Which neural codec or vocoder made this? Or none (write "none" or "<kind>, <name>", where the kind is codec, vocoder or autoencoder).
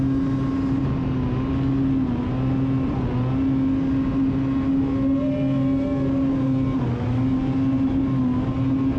none